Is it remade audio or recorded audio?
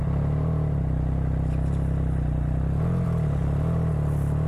recorded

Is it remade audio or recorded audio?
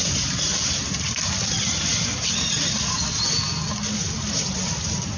remade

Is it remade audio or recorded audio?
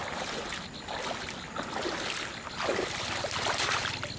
recorded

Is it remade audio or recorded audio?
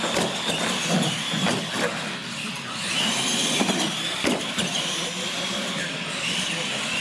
recorded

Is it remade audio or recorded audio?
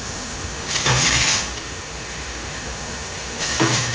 remade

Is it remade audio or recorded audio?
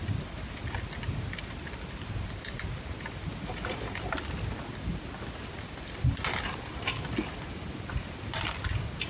recorded